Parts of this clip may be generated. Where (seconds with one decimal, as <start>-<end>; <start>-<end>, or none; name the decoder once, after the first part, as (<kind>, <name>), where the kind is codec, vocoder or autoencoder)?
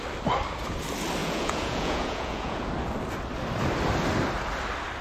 1.2-2.7 (vocoder, Vocos)